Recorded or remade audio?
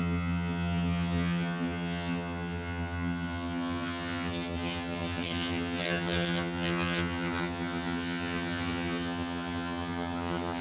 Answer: remade